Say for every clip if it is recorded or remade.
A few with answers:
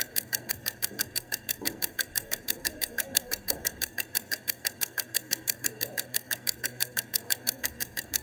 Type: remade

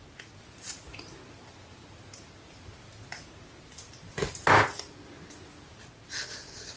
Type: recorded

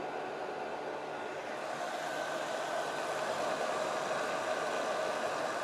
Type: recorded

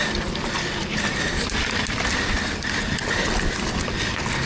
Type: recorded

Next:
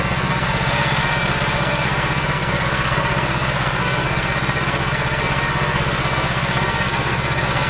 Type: remade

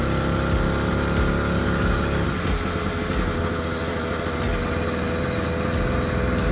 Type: recorded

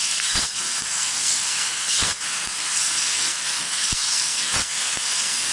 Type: remade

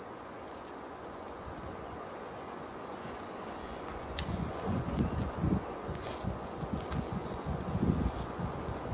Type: remade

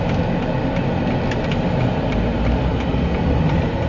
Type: recorded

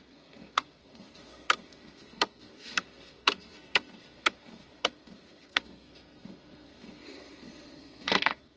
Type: remade